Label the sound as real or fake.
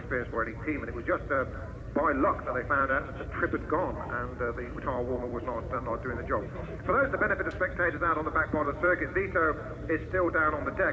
fake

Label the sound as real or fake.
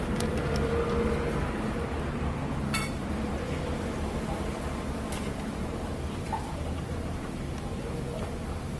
fake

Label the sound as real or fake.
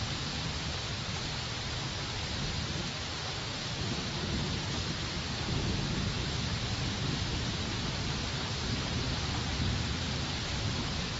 fake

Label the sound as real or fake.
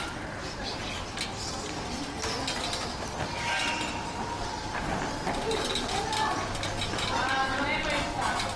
real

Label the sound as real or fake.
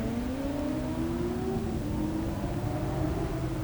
real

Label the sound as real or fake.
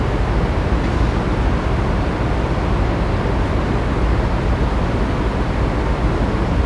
real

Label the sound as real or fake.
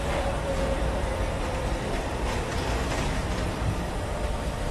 fake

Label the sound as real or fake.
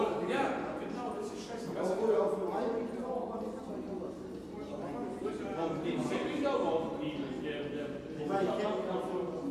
real